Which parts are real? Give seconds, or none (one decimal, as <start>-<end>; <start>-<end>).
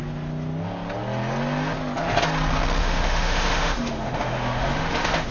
0.0-2.8